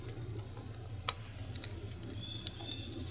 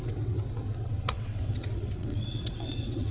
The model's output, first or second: second